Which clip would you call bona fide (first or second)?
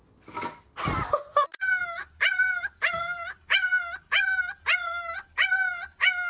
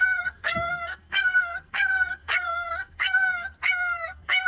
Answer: first